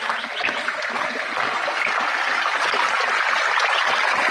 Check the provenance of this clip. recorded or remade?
recorded